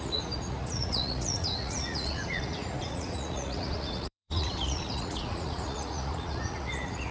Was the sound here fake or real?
fake